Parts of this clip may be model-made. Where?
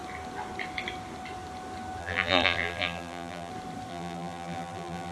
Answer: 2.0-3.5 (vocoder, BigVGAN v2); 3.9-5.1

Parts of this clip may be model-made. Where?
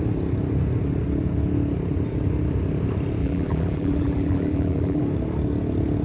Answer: 3.2-5.0 (vocoder, BigVGAN v2)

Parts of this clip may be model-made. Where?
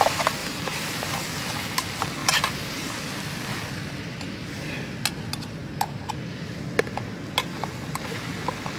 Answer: 0.4-1.1 (vocoder, BigVGAN v2); 2.2-2.9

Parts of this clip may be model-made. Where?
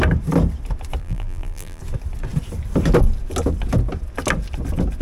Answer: 1.0-1.8 (vocoder, BigVGAN v2)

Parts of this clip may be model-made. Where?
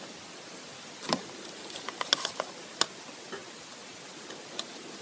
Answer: none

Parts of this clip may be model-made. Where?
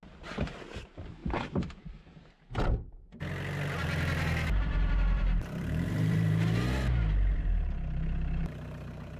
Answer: 1.2-1.8 (vocoder, BigVGAN v2); 3.8-9.2